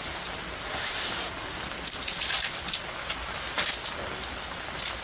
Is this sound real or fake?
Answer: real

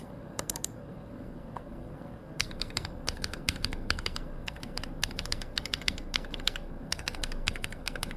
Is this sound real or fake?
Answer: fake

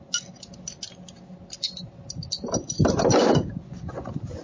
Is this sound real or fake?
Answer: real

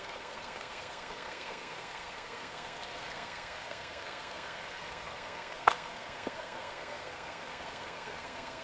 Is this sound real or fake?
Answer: fake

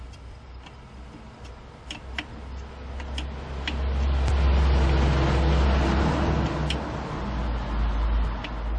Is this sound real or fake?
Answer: real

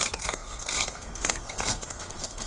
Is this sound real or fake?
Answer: fake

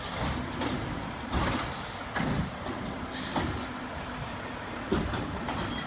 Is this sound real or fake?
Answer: real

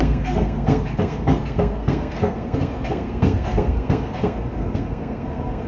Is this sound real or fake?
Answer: fake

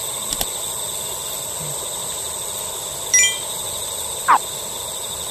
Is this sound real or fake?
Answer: real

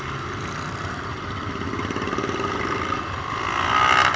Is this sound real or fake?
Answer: real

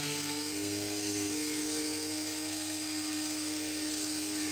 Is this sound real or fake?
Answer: fake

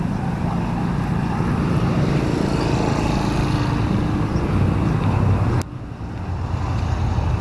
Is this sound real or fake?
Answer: real